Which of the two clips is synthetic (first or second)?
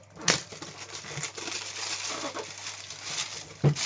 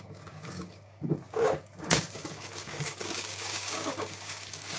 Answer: second